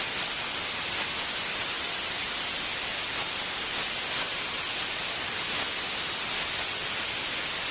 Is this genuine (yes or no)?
yes